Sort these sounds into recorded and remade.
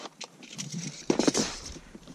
remade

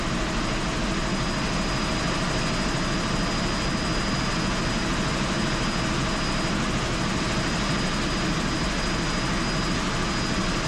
recorded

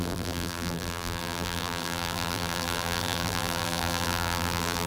remade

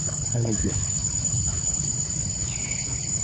remade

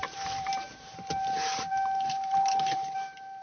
remade